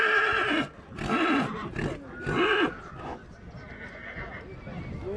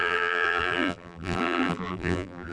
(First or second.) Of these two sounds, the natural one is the first